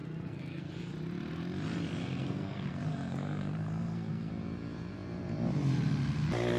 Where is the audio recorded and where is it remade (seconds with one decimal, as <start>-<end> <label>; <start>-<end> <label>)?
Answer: 0.0-0.7 remade; 0.7-2.0 recorded; 2.0-4.3 remade; 4.3-6.6 recorded